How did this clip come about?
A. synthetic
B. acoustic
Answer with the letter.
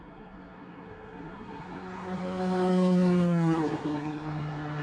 A